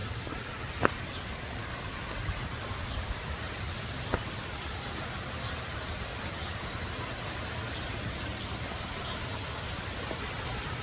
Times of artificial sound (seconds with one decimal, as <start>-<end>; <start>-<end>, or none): 0.0-1.2; 6.1-6.7